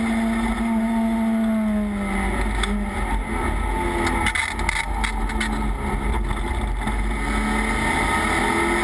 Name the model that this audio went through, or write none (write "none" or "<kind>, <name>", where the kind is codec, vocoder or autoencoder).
none